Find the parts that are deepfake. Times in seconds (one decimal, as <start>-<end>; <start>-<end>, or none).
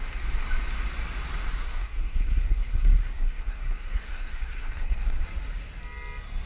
1.6-5.2